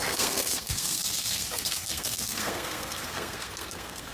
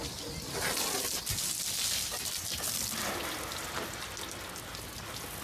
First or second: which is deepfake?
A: first